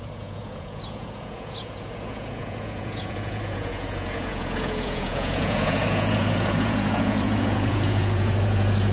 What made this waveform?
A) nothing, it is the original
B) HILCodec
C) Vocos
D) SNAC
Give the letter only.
C